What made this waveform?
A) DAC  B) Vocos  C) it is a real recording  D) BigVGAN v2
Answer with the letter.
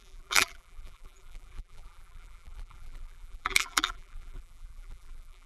D